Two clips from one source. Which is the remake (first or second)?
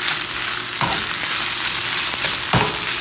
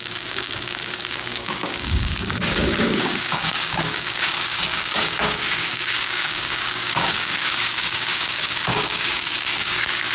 second